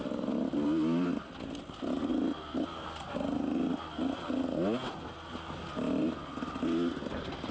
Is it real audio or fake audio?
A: real